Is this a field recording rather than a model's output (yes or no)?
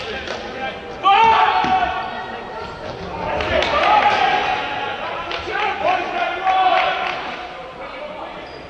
yes